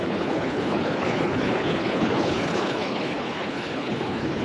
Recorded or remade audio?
remade